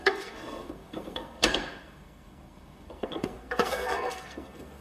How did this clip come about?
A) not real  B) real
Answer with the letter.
A